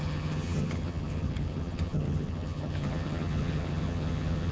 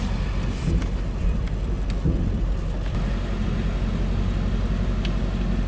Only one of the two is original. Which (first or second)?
second